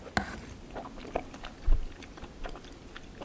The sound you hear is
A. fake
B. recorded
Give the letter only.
B